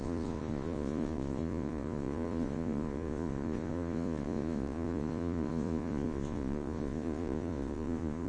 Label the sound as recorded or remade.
remade